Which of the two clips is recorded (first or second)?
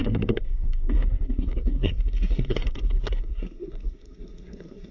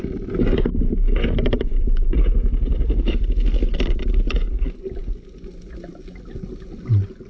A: second